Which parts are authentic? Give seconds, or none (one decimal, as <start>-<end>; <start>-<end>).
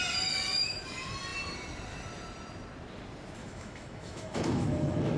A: 0.0-3.4